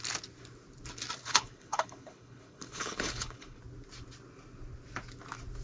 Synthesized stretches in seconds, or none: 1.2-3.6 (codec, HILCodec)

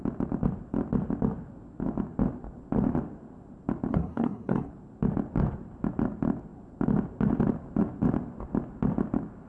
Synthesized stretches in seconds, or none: 3.9-4.7 (codec, SNAC)

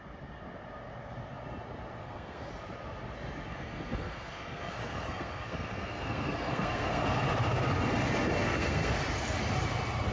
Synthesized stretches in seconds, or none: 2.0-2.5 (codec, SNAC); 3.5-7.0; 8.4-8.9

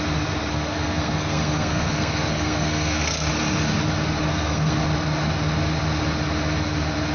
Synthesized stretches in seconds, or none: 0.5-3.3 (codec, SNAC); 4.3-4.8

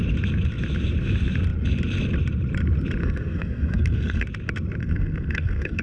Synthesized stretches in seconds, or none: 3.0-4.2 (codec, SNAC); 4.8-5.8